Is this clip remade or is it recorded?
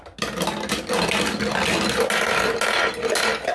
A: recorded